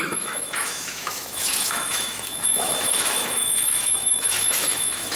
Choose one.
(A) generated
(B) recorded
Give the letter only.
A